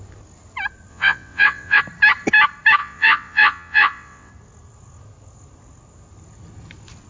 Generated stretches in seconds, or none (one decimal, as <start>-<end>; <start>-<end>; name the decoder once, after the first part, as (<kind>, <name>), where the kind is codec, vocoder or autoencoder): 0.9-1.8 (vocoder, WaveNeXt); 2.8-4.3